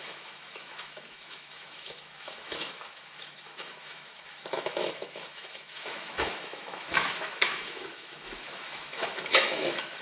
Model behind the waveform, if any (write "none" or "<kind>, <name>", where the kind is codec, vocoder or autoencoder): autoencoder, DAC-VAE